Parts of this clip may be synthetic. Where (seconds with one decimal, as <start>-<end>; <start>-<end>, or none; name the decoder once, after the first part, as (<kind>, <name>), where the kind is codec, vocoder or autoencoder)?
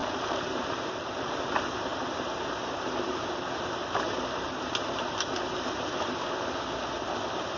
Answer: 0.0-1.4 (vocoder, BigVGAN v2)